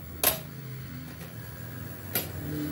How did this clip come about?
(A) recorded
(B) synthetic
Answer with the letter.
A